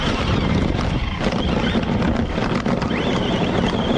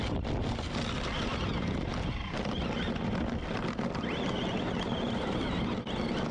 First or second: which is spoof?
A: first